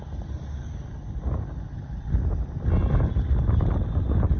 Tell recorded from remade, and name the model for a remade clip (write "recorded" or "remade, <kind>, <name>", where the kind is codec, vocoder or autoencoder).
recorded